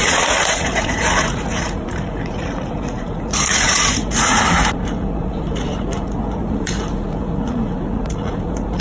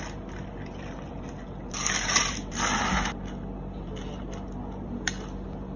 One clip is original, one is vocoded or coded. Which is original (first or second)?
second